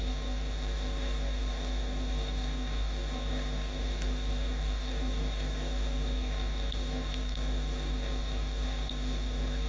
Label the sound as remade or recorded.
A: remade